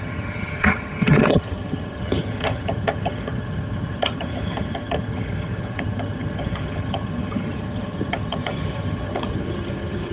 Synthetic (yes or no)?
yes